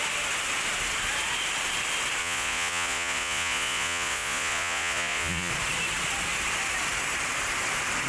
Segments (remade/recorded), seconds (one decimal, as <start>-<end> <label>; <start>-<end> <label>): 0.0-2.2 recorded; 2.2-5.5 remade; 5.5-8.1 recorded